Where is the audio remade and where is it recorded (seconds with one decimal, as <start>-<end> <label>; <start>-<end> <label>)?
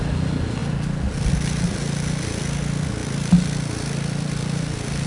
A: 0.0-0.6 recorded; 0.6-1.3 remade; 1.3-3.0 recorded; 3.0-5.1 remade